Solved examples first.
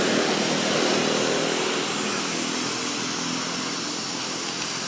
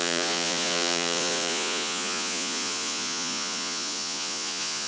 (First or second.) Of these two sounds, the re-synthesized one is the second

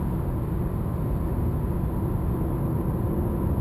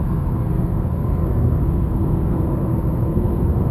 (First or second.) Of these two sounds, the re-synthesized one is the second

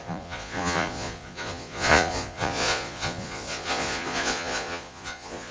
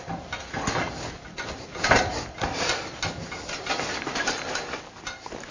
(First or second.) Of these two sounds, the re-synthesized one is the first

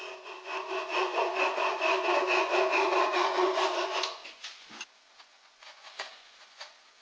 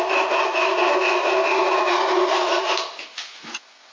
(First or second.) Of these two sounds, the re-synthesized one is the first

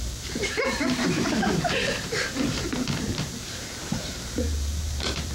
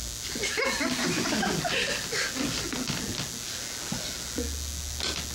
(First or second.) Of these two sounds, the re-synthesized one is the first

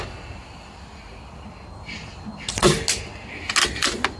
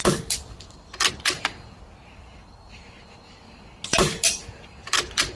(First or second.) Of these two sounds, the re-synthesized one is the second